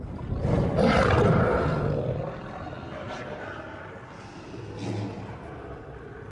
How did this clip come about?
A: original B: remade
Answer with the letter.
A